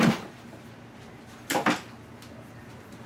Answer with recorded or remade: recorded